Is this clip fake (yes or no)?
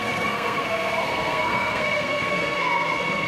yes